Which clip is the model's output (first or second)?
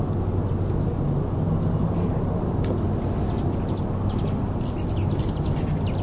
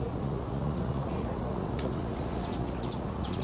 second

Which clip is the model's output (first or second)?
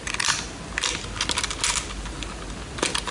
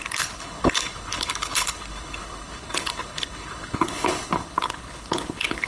second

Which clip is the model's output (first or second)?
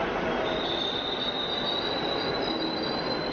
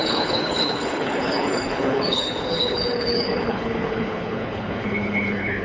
second